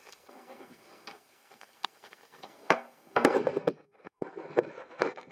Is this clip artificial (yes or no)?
yes